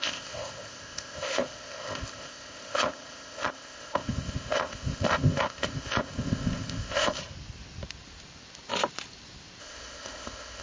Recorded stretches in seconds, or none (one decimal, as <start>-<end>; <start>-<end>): 7.2-9.6